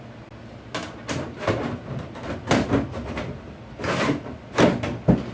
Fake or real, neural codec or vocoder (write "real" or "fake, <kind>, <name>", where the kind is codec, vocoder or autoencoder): real